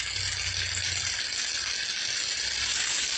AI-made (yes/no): no